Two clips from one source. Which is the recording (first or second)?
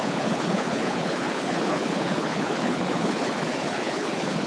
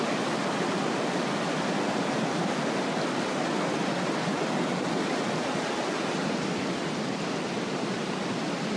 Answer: second